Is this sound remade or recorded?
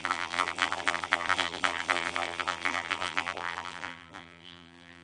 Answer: remade